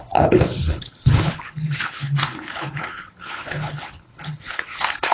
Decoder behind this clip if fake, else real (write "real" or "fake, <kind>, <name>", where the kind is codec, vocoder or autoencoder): fake, codec, HILCodec